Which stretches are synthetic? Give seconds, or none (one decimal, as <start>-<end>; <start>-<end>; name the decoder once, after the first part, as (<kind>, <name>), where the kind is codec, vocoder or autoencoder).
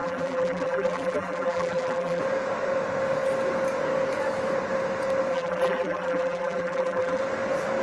0.0-2.2 (vocoder, BigVGAN v2); 5.3-7.2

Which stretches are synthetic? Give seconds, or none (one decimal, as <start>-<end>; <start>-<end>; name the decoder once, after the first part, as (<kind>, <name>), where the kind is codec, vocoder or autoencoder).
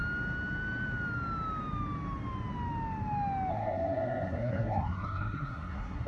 3.5-6.1 (codec, SNAC)